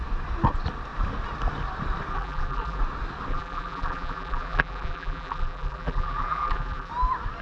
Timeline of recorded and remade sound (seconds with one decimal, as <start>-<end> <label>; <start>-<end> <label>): 0.0-2.1 recorded; 2.1-2.8 remade; 2.8-3.3 recorded; 3.3-6.9 remade; 6.9-7.4 recorded